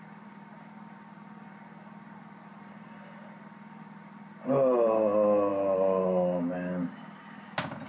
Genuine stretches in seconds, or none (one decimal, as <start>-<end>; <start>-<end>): 0.0-7.9